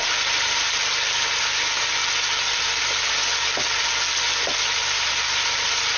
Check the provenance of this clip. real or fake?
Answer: real